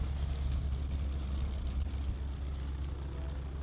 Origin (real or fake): real